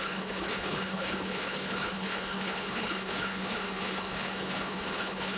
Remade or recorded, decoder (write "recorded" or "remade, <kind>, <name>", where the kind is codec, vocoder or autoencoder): remade, codec, HILCodec